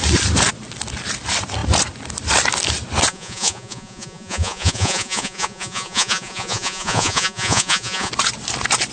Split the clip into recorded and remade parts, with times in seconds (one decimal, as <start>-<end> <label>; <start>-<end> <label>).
0.0-3.1 recorded; 3.1-8.1 remade; 8.1-8.9 recorded